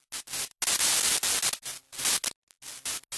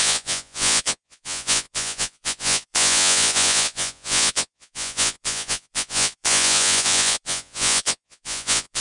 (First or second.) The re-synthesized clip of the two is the second